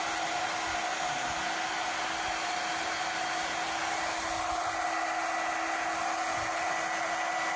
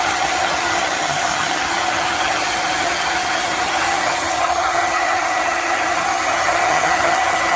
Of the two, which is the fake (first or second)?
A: second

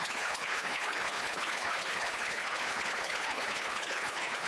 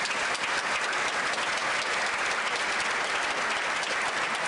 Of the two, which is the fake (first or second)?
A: first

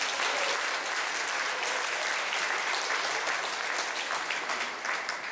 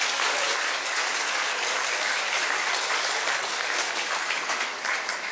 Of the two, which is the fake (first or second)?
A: second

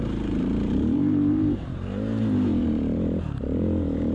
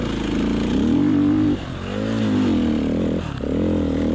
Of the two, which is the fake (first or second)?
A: first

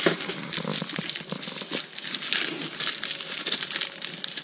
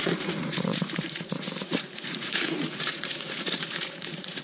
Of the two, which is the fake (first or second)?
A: second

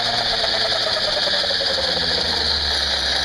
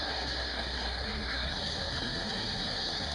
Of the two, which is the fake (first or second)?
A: second